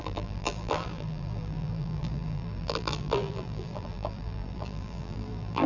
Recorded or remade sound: remade